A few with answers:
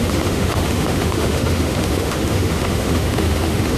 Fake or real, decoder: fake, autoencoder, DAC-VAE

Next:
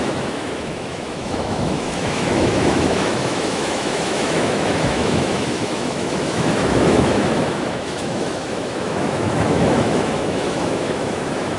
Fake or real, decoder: fake, autoencoder, DAC-VAE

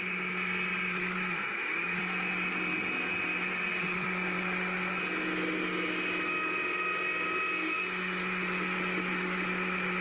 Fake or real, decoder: real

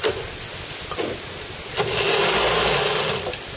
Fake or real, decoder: real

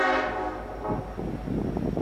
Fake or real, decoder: real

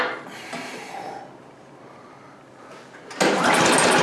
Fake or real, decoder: real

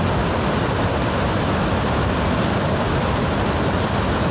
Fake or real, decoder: real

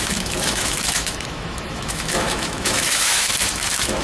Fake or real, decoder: fake, autoencoder, DAC-VAE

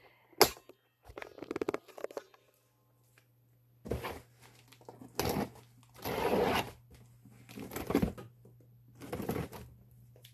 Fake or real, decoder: real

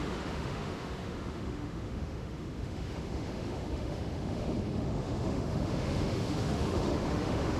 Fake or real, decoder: fake, autoencoder, DAC-VAE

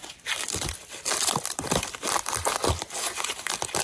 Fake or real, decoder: real